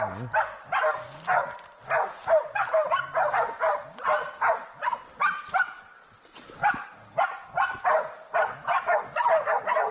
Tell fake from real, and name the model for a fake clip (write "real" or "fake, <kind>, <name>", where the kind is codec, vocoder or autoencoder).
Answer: real